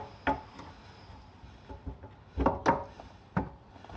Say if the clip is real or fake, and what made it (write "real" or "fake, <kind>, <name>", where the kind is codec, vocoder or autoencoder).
real